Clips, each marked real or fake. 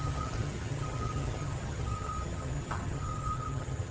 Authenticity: fake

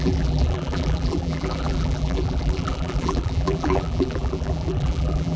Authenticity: fake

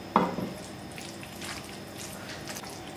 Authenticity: real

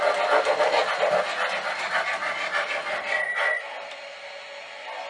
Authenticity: real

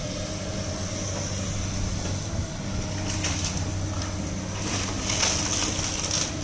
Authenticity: real